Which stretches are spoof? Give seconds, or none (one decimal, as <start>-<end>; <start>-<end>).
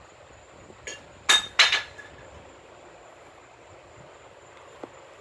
none